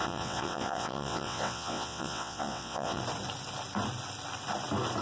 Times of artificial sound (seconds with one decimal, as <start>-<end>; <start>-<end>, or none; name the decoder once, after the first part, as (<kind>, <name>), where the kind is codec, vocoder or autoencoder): 0.0-3.0 (vocoder, WaveNeXt)